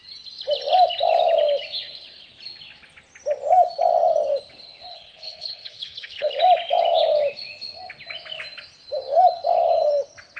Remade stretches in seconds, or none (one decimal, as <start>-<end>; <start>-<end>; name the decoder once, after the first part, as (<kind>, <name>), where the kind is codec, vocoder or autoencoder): 4.9-6.3 (codec, HILCodec)